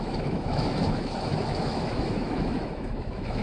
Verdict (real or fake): fake